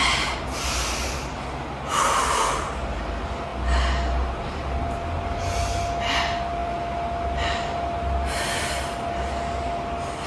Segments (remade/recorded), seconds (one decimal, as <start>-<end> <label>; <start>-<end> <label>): 0.0-10.3 recorded